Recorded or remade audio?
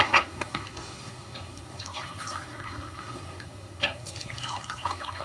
remade